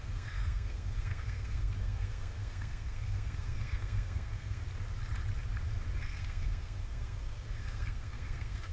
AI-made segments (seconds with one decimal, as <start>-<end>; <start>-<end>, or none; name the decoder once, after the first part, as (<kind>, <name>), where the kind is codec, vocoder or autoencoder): 0.0-4.6 (codec, SNAC); 6.0-8.7